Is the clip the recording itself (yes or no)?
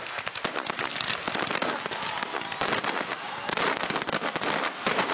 yes